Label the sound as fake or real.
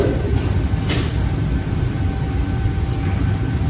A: real